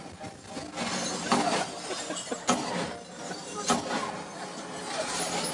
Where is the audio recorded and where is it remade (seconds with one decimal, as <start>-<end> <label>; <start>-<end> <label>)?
0.0-3.1 recorded; 3.1-4.0 remade; 4.0-4.9 recorded; 4.9-5.5 remade